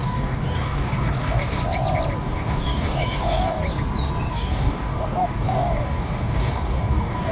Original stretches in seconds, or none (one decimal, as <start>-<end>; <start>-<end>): 1.6-2.2; 3.6-4.3